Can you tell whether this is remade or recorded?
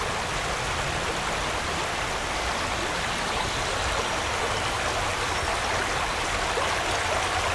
recorded